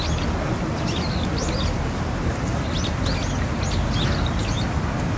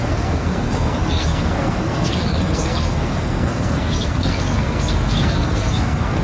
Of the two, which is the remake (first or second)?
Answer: second